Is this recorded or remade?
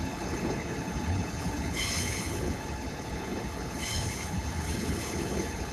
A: remade